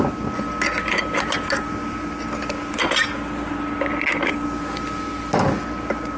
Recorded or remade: recorded